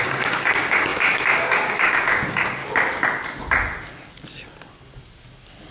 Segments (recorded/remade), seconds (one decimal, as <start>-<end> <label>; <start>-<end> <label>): 0.0-2.6 remade; 2.6-5.7 recorded